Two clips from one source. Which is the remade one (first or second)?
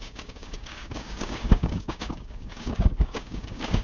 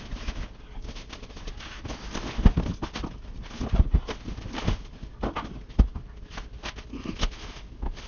first